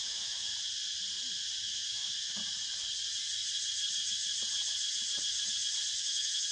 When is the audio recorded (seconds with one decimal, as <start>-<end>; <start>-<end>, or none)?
0.5-1.6; 2.4-6.0